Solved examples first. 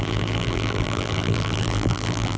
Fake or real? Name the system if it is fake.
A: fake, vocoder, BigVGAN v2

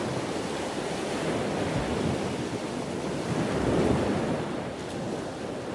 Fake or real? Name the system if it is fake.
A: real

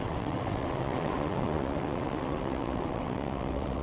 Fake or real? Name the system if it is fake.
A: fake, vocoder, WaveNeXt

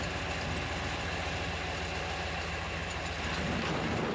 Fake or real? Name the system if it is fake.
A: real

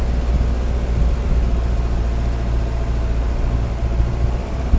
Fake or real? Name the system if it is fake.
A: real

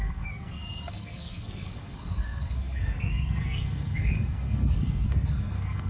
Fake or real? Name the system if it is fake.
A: fake, codec, SNAC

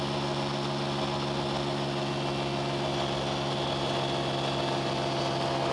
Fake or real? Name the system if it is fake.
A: real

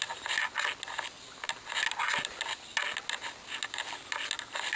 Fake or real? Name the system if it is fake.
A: real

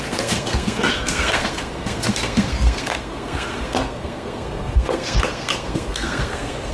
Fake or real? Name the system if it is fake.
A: fake, codec, SNAC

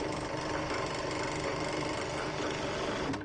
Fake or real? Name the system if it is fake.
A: real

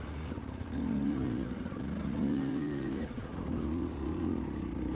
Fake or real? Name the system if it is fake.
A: fake, vocoder, Vocos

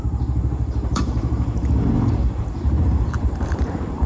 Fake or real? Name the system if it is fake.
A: fake, vocoder, BigVGAN v2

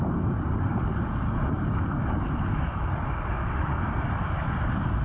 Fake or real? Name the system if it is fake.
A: fake, vocoder, BigVGAN v2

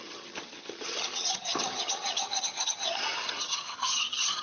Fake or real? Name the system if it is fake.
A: fake, vocoder, HiFi-GAN